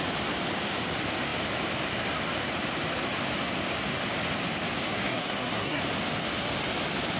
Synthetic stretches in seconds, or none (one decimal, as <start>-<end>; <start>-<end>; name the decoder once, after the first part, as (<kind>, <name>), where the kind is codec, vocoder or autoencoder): 4.9-5.8 (codec, SNAC)